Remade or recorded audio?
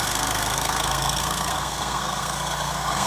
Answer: remade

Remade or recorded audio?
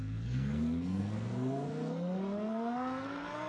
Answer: remade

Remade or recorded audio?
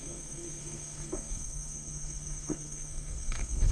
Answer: remade